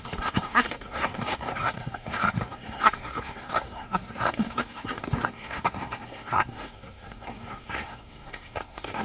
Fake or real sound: fake